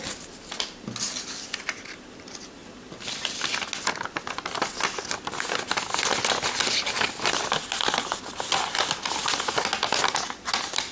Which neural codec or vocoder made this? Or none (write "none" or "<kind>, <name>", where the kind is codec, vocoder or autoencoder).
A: none